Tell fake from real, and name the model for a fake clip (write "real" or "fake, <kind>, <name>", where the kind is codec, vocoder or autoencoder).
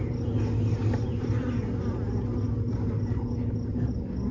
real